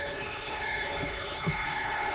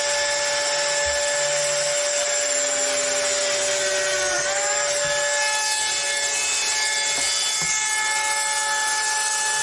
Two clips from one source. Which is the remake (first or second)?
first